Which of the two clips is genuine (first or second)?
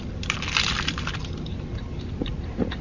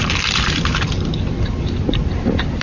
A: first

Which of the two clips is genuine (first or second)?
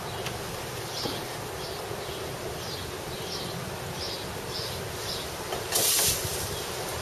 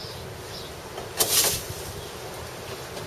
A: second